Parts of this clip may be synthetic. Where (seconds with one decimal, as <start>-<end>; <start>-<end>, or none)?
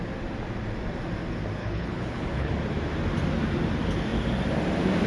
1.6-2.5